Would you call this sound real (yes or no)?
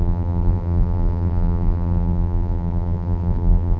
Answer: no